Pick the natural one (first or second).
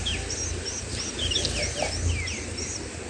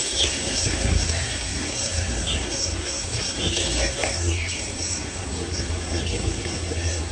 first